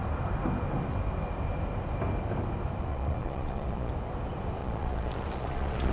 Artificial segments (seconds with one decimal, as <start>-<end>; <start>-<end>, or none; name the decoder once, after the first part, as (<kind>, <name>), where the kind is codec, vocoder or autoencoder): 2.9-3.9 (vocoder, Vocos); 4.6-5.9